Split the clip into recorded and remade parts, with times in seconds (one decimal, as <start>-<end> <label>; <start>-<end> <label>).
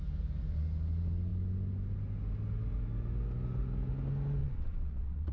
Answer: 0.0-4.4 recorded; 4.4-5.3 remade